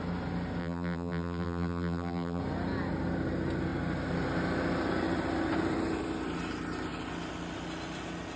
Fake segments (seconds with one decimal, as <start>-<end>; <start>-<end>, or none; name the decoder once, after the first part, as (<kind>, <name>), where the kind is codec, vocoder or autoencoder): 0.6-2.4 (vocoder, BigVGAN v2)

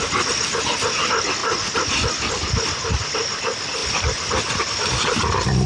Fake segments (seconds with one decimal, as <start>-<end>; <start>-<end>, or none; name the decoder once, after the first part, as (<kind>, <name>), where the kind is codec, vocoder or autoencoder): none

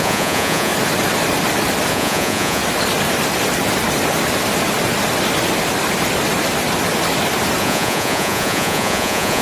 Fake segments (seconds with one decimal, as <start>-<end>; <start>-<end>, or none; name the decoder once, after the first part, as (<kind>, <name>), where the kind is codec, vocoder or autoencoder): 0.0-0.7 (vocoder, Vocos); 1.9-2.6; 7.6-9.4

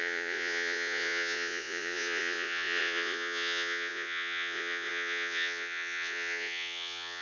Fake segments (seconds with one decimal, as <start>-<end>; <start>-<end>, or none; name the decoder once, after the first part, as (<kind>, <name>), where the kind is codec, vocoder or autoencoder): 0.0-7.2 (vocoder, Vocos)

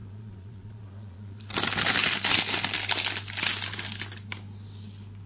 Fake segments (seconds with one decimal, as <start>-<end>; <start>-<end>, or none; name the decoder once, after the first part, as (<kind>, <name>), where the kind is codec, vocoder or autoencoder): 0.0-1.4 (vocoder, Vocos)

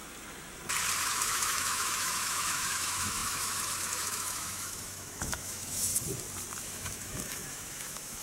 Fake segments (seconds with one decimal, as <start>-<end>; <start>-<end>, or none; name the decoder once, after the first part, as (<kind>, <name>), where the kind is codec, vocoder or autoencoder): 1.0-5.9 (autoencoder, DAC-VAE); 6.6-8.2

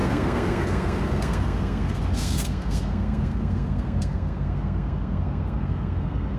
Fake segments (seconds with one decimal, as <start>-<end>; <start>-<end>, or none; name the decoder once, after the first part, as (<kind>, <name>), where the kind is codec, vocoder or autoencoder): 0.0-6.4 (codec, SNAC)

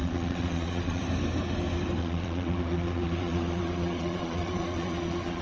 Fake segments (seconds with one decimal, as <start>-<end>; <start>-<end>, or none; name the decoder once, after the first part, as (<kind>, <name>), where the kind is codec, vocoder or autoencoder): 0.0-1.0 (vocoder, Vocos); 2.0-5.4